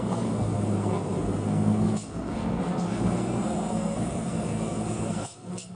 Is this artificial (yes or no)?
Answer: yes